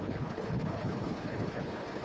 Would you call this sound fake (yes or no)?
yes